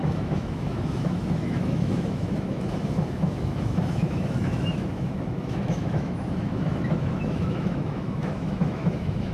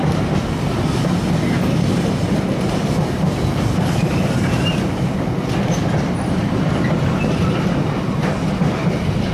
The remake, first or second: first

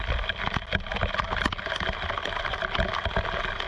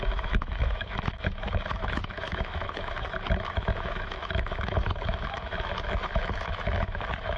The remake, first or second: second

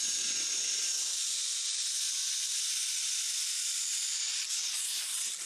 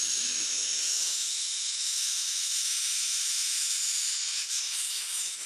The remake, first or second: second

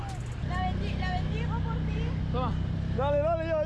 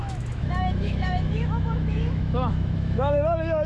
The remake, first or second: second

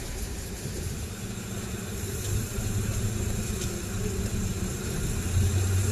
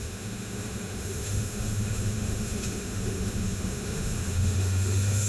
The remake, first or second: second